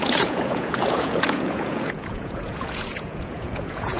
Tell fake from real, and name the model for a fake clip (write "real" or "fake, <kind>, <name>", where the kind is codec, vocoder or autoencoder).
fake, vocoder, Vocos